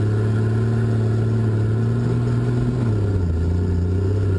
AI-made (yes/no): no